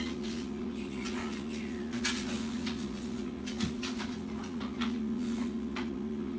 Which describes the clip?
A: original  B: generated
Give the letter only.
B